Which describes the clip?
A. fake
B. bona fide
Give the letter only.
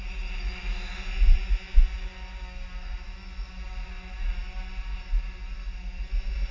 B